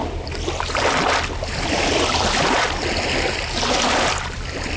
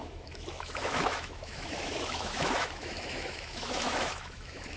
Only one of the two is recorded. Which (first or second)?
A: first